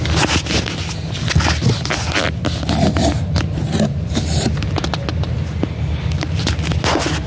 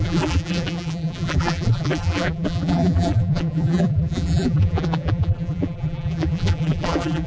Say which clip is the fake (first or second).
second